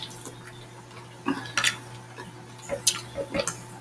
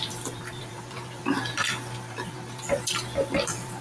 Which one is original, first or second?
first